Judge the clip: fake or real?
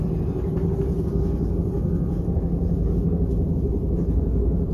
real